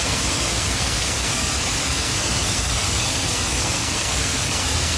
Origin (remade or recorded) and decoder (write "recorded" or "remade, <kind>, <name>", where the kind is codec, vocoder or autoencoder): remade, codec, SNAC